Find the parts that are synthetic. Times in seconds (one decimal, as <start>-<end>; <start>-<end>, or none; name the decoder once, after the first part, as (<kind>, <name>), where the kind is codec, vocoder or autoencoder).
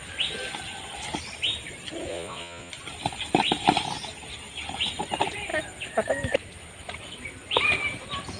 2.1-2.7 (vocoder, Vocos)